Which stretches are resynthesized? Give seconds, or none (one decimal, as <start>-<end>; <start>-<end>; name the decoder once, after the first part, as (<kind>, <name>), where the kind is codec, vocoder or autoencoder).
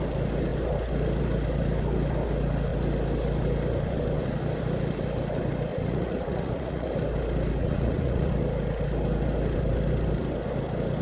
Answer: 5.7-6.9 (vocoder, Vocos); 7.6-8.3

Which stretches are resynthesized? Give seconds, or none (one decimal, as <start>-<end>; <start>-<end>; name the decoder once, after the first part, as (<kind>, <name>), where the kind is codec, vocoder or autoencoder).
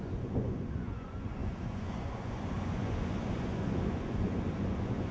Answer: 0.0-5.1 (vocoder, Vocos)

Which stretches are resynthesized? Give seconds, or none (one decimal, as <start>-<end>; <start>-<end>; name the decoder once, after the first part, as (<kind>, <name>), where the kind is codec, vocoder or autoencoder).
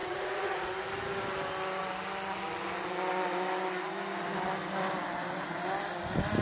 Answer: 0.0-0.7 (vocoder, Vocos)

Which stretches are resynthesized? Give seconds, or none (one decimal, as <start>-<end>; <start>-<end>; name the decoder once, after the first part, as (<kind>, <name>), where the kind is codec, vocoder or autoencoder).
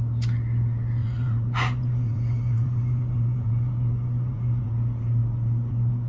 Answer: 1.0-4.7 (vocoder, Vocos); 5.2-6.1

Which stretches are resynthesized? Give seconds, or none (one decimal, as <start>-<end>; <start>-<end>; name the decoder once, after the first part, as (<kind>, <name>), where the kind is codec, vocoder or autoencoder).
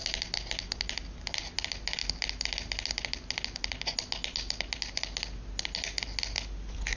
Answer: none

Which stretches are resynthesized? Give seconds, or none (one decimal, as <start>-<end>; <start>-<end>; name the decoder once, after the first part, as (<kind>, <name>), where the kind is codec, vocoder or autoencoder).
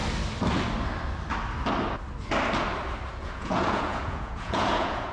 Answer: 3.1-5.1 (vocoder, Vocos)